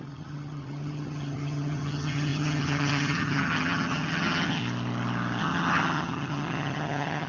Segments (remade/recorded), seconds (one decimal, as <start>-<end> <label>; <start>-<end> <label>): 0.0-4.6 remade; 4.6-5.4 recorded; 5.4-7.3 remade